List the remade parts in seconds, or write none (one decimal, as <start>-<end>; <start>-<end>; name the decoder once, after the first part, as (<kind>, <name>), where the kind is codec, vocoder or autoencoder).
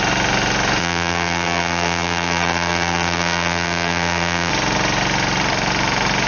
0.8-4.5 (vocoder, BigVGAN v2)